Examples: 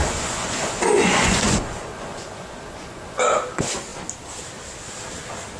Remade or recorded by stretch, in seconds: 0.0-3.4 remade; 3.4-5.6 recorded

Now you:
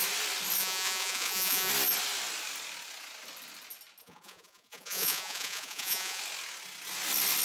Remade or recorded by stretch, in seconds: 0.0-0.6 recorded; 0.6-1.7 remade; 1.7-4.0 recorded; 4.0-6.2 remade; 6.2-7.4 recorded

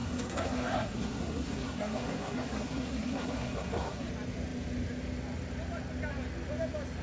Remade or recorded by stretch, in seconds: 0.0-4.1 remade; 4.1-7.0 recorded

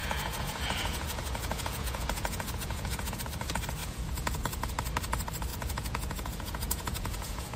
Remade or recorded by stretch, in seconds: 0.0-3.2 remade; 3.2-3.8 recorded; 3.8-4.7 remade; 4.7-5.5 recorded; 5.5-7.6 remade

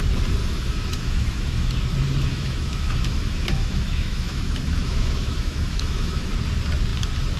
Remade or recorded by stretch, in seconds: 0.0-0.4 recorded; 0.4-1.7 remade; 1.7-2.3 recorded; 2.3-6.3 remade; 6.3-7.4 recorded

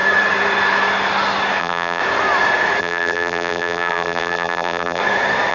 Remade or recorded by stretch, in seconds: 0.0-1.6 recorded; 1.6-2.0 remade; 2.0-2.8 recorded; 2.8-5.0 remade; 5.0-5.5 recorded

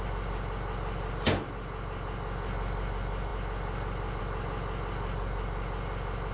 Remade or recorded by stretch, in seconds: 0.0-6.3 recorded